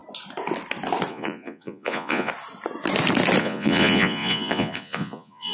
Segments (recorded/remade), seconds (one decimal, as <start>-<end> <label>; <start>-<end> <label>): 0.0-1.1 recorded; 1.1-2.3 remade; 2.3-3.4 recorded; 3.4-5.5 remade